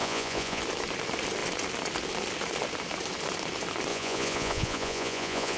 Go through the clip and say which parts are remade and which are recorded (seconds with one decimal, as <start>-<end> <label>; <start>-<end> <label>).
0.0-0.6 remade; 0.6-3.9 recorded; 3.9-5.6 remade